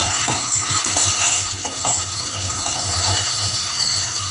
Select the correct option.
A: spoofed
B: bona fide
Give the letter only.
A